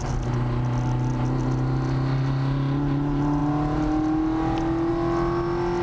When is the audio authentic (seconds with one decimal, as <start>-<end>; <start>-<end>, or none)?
0.0-5.8